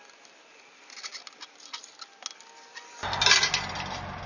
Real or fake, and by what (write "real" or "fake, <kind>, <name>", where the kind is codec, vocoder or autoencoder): real